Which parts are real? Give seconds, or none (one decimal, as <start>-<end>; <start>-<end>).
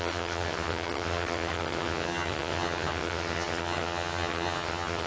none